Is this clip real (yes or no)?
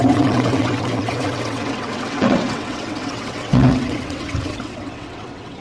no